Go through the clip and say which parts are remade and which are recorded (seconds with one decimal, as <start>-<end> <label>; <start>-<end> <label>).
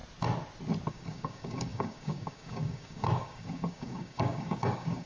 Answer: 0.0-0.9 recorded; 0.9-5.1 remade